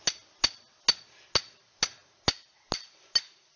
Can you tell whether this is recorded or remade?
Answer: recorded